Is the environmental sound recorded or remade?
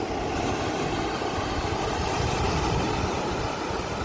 recorded